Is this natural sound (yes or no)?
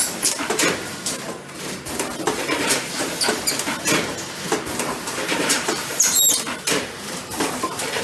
no